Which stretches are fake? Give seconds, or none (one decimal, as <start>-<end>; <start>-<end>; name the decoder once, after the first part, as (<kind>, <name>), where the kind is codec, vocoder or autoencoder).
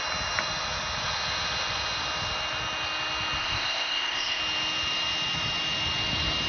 3.4-4.4 (codec, ZipCodec)